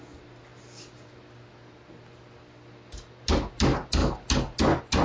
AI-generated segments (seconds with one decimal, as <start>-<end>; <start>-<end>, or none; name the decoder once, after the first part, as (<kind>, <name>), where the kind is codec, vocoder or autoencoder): none